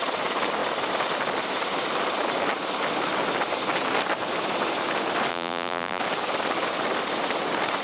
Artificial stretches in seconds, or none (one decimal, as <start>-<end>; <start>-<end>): 5.3-6.0